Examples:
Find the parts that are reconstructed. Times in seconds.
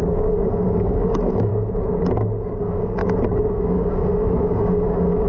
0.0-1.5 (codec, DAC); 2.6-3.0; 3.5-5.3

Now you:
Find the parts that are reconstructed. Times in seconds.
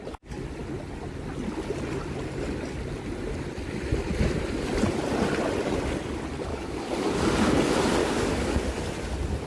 6.5-7.3 (codec, DAC); 8.0-8.6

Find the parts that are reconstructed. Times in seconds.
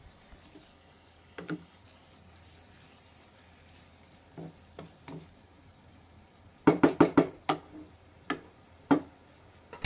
0.7-1.8 (codec, DAC)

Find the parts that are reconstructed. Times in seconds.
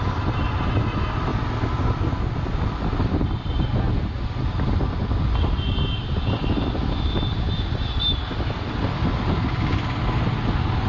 none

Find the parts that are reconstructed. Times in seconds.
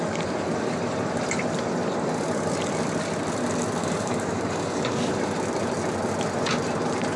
3.8-5.1 (codec, DAC)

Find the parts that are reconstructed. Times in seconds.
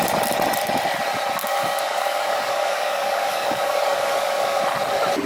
1.4-4.6 (codec, DAC)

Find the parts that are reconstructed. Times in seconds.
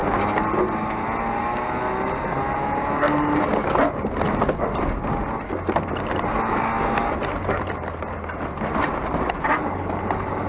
none